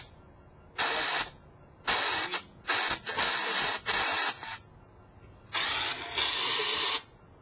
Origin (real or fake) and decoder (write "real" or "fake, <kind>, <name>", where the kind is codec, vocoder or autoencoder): real